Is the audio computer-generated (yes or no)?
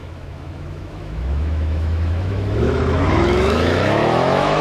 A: yes